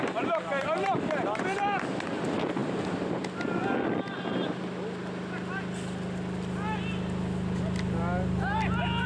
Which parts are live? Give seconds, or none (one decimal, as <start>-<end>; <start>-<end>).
0.0-9.1